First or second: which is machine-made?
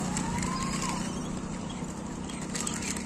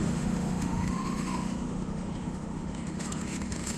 second